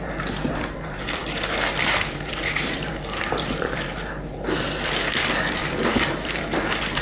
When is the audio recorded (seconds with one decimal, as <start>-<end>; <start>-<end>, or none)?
none